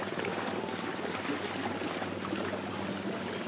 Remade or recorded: recorded